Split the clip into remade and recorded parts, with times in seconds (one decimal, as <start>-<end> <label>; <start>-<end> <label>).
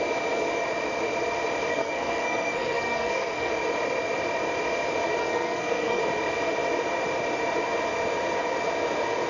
0.0-1.7 recorded; 1.7-3.5 remade; 3.5-5.2 recorded; 5.2-6.0 remade; 6.0-9.3 recorded